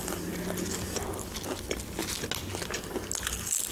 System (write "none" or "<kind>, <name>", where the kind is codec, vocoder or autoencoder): none